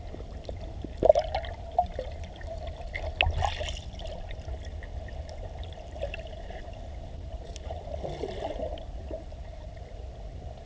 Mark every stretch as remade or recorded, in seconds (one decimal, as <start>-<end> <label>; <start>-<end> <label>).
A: 0.0-10.7 recorded